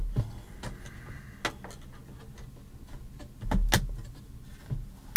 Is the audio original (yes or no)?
yes